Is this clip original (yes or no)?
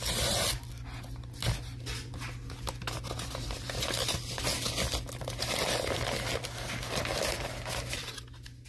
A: yes